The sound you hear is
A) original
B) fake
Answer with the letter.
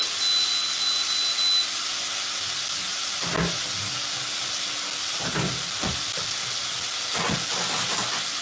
A